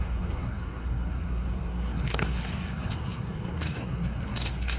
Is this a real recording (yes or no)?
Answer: no